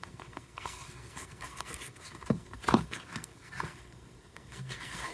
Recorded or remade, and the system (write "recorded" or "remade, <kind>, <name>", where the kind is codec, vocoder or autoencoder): remade, codec, SNAC